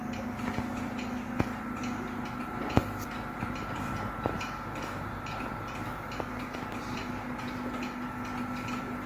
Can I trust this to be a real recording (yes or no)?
yes